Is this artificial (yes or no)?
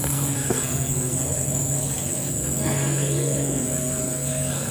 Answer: yes